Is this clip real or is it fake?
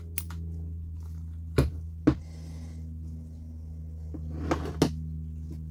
real